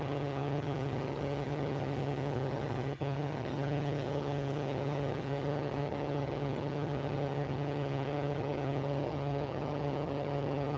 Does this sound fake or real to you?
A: fake